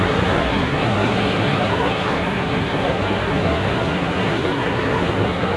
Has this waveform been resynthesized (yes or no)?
yes